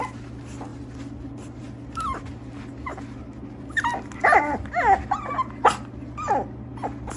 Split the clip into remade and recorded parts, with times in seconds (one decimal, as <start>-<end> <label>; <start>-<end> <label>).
0.0-7.2 recorded